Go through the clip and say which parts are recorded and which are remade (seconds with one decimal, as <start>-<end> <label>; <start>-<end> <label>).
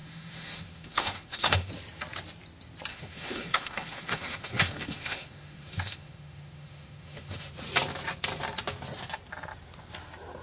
0.0-1.7 remade; 1.7-2.9 recorded; 2.9-7.5 remade; 7.5-10.4 recorded